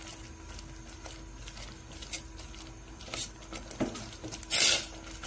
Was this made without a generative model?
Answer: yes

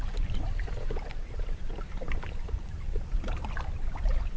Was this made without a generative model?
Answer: no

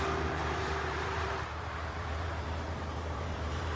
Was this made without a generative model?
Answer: no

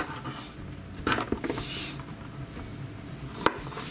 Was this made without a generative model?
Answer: yes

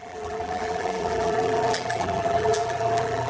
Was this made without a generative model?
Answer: no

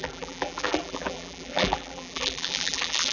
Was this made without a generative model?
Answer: no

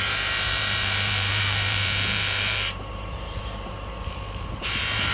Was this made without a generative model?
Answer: no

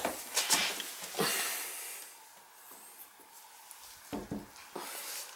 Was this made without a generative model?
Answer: yes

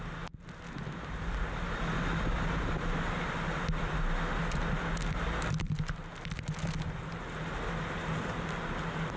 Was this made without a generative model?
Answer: yes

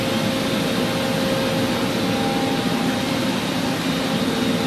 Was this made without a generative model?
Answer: yes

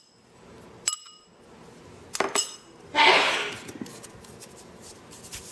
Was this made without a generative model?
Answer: yes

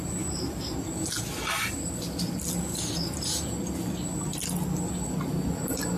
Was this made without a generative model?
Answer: yes